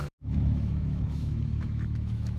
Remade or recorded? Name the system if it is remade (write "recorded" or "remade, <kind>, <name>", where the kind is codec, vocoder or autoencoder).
remade, autoencoder, DAC-VAE